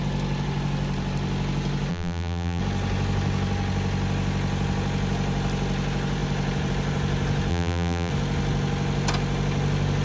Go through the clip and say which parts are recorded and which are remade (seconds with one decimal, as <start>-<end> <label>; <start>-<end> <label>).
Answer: 0.0-1.9 recorded; 1.9-2.6 remade; 2.6-7.5 recorded; 7.5-8.1 remade; 8.1-10.0 recorded